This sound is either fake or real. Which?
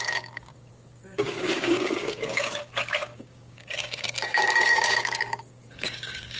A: fake